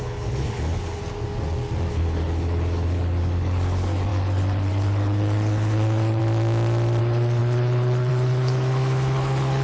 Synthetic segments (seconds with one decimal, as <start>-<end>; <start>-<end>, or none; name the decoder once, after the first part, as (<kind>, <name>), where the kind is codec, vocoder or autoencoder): 0.0-1.0 (codec, HILCodec); 1.9-6.2; 7.0-9.6